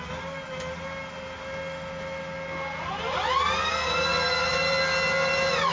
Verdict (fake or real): real